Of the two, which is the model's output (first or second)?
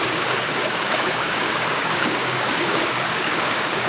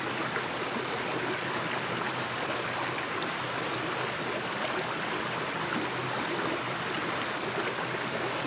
first